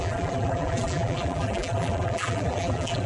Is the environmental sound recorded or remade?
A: remade